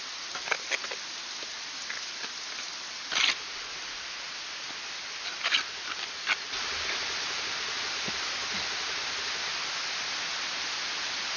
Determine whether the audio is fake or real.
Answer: real